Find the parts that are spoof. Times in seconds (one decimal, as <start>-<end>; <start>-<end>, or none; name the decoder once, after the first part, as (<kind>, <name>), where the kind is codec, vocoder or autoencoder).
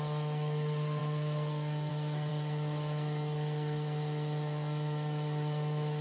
0.0-6.0 (codec, SNAC)